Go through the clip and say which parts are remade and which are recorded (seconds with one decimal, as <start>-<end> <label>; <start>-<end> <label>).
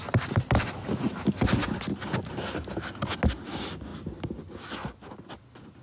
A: 0.0-5.8 recorded